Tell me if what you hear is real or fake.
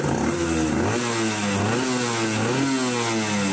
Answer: real